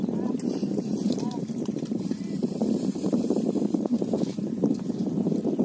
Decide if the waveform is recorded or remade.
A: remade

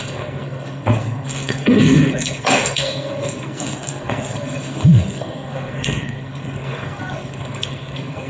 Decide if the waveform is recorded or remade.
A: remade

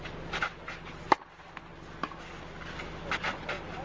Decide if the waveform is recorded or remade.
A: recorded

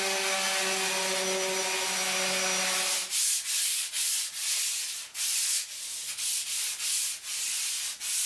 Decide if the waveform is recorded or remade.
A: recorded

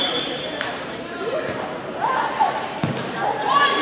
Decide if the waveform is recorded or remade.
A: remade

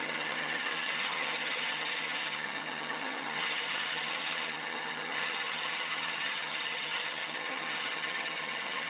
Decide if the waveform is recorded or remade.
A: remade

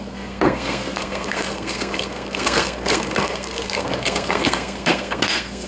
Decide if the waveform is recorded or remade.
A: remade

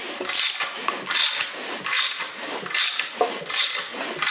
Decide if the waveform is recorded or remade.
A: recorded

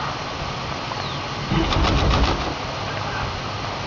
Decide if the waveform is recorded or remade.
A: recorded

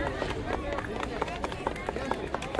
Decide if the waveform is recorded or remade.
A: recorded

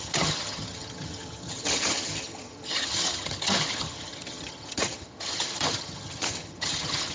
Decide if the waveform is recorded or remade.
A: remade